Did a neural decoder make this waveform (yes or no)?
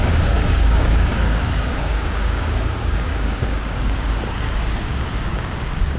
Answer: yes